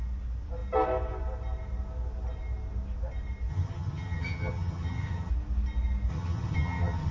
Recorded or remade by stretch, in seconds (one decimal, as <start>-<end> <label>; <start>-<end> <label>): 0.0-3.5 recorded; 3.5-5.3 remade; 5.3-6.1 recorded; 6.1-7.1 remade